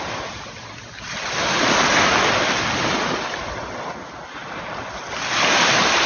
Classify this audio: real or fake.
real